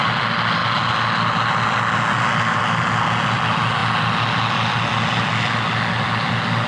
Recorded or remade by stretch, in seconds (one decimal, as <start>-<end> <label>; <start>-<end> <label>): 0.0-6.7 recorded